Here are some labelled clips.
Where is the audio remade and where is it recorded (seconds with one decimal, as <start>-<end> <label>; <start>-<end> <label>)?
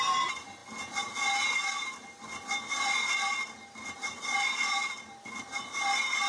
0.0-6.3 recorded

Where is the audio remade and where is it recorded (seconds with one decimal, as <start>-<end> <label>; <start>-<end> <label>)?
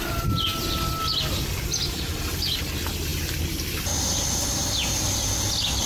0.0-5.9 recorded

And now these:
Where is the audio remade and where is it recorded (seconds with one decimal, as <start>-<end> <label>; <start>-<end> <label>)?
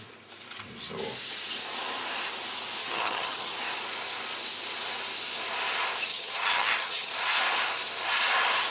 0.0-2.8 recorded; 2.8-3.5 remade; 3.5-6.1 recorded; 6.1-7.1 remade; 7.1-8.7 recorded